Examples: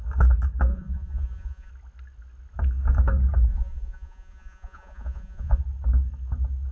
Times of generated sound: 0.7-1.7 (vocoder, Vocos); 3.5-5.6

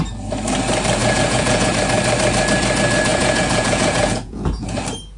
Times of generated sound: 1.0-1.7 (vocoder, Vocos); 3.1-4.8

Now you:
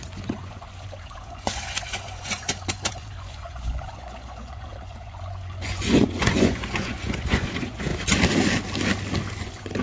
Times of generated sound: 0.0-7.9 (vocoder, Vocos); 9.4-9.8

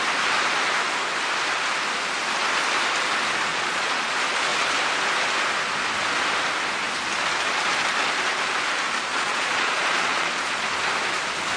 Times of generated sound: 3.5-4.1 (vocoder, Vocos); 9.1-10.6